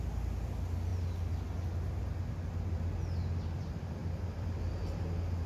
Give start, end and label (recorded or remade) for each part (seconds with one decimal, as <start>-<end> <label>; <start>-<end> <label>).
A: 0.0-4.0 recorded; 4.0-4.7 remade; 4.7-5.5 recorded

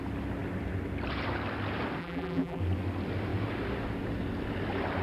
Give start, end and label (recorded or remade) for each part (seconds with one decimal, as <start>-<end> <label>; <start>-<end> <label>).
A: 0.0-2.0 recorded; 2.0-2.6 remade; 2.6-5.0 recorded

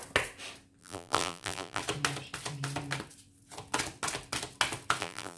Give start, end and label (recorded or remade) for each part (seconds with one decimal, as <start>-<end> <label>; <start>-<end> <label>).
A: 0.0-0.8 recorded; 0.8-1.8 remade; 1.8-5.0 recorded; 5.0-5.4 remade

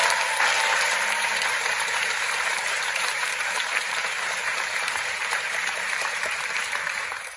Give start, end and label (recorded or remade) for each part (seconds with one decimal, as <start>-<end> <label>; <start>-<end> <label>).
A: 0.0-0.7 recorded; 0.7-7.4 remade